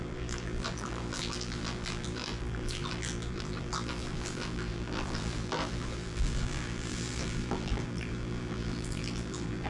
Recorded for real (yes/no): no